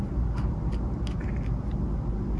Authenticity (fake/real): real